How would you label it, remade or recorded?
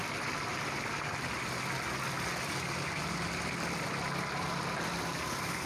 recorded